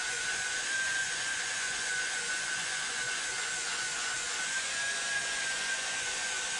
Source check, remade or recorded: remade